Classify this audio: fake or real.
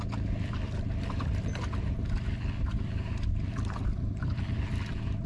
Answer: real